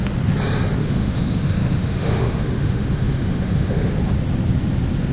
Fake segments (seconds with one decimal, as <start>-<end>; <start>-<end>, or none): 0.8-3.9